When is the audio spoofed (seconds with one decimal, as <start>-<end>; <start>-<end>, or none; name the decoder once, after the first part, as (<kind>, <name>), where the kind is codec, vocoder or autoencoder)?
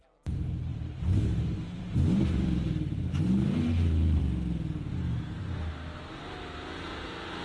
0.7-4.2 (vocoder, BigVGAN v2)